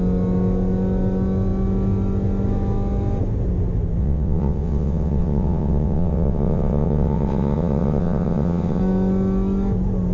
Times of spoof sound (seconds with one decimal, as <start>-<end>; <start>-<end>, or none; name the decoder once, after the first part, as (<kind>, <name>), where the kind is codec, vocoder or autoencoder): 4.0-8.8 (vocoder, WaveNeXt)